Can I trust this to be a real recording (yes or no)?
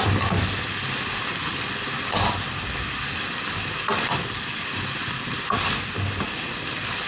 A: yes